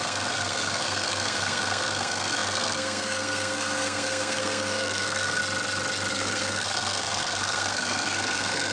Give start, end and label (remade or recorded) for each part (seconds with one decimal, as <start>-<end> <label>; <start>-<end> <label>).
0.0-5.4 remade; 5.4-6.1 recorded; 6.1-8.7 remade